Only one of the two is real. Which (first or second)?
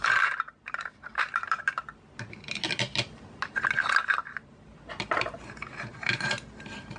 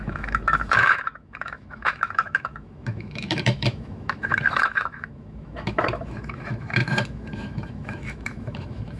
first